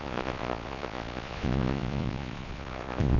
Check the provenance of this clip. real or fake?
fake